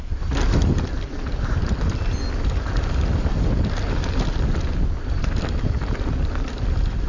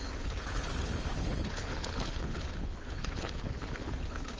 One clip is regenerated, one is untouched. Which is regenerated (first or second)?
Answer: second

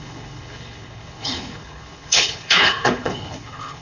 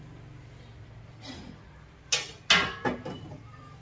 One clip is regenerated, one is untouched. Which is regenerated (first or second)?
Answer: first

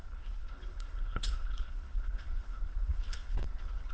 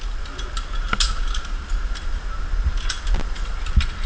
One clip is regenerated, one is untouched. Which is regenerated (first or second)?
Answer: first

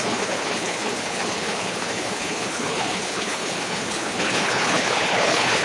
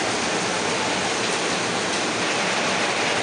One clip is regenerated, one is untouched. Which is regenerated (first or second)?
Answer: first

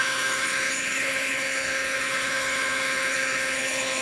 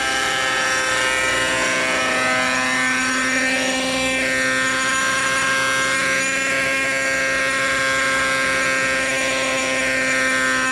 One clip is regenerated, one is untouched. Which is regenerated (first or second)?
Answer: first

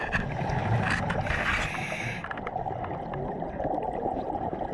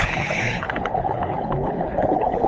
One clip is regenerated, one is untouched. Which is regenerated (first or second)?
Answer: second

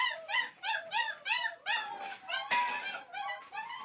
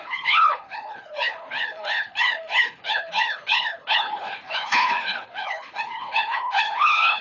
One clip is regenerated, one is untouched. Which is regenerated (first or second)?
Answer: second